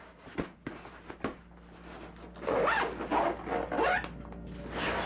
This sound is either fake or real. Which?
real